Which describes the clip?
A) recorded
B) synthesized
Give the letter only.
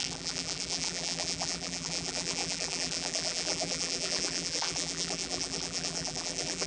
B